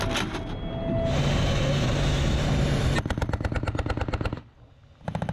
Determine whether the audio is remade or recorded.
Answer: recorded